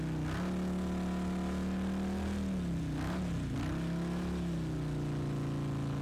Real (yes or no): yes